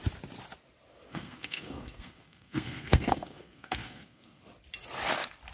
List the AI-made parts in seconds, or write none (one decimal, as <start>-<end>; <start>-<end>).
1.1-4.4